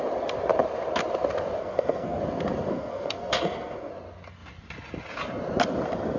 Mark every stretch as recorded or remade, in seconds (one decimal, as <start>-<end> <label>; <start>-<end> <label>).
0.0-1.6 recorded; 1.6-2.2 remade; 2.2-2.7 recorded; 2.7-3.9 remade; 3.9-6.2 recorded